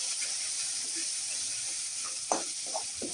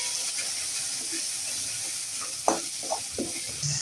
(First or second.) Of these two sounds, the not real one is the first